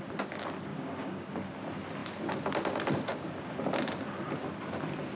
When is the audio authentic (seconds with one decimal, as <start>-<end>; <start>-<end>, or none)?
0.0-0.7; 1.3-5.2